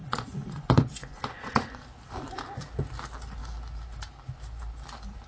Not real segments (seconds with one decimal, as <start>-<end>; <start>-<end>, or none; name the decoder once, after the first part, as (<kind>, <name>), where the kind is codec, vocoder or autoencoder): 0.0-1.6 (vocoder, Vocos)

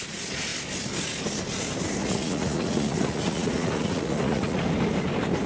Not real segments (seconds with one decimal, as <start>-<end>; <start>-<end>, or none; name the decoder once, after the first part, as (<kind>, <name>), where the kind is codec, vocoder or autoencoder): 2.0-4.6 (vocoder, Vocos)

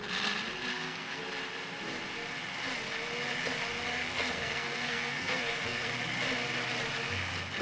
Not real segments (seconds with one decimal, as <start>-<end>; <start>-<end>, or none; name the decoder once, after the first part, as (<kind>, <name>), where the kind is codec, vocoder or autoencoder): 0.7-1.2 (codec, SNAC); 4.0-5.9

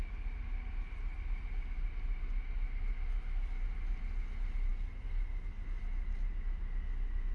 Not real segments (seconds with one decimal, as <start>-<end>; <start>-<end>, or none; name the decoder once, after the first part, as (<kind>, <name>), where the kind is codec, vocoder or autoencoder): none

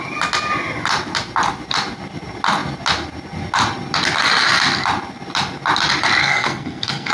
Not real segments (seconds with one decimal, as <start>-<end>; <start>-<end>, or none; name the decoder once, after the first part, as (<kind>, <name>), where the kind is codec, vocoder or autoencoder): 6.2-7.1 (codec, SNAC)

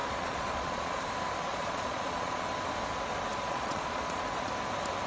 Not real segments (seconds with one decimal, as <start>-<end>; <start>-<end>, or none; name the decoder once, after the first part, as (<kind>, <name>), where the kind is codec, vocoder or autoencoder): 0.0-1.0 (vocoder, Vocos); 1.5-2.5; 3.3-4.5

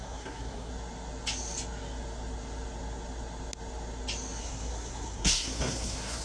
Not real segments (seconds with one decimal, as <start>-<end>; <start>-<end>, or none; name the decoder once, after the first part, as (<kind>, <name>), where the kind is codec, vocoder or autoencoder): 0.0-0.7 (codec, SNAC); 4.4-6.2

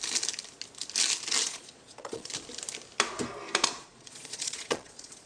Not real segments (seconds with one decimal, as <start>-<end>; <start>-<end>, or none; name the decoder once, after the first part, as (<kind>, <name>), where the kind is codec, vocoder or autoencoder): 1.4-2.3 (vocoder, Vocos); 3.8-5.3